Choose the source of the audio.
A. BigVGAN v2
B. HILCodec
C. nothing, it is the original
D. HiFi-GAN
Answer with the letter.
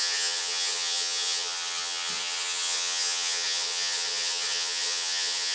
D